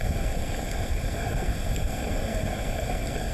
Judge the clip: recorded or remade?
remade